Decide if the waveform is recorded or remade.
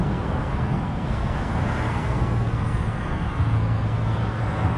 remade